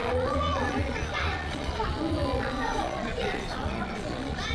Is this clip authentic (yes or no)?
no